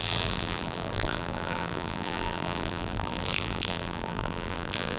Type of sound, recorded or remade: remade